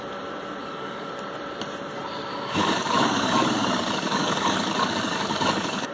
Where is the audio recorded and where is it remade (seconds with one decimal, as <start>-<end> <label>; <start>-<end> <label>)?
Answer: 0.0-0.6 recorded; 0.6-1.1 remade; 1.1-2.3 recorded; 2.3-5.9 remade